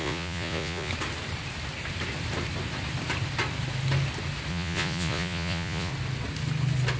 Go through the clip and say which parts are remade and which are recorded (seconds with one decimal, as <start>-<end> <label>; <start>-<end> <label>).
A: 0.0-0.9 remade; 0.9-4.5 recorded; 4.5-5.9 remade; 5.9-7.0 recorded